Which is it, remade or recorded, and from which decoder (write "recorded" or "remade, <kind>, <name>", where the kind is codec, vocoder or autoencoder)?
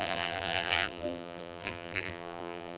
remade, vocoder, BigVGAN v2